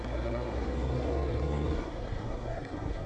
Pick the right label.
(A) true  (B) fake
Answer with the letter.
B